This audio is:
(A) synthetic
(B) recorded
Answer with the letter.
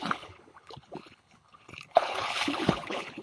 A